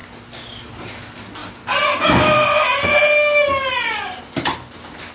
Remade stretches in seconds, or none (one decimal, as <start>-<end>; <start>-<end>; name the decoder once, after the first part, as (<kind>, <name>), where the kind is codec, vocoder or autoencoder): none